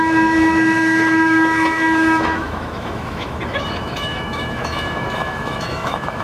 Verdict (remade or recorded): remade